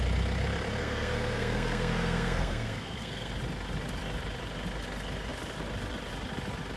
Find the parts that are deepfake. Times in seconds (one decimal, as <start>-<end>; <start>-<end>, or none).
0.8-3.3